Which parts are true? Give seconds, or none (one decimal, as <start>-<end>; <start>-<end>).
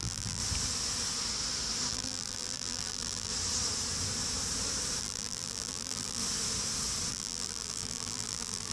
0.4-1.9; 3.3-5.0; 6.2-7.1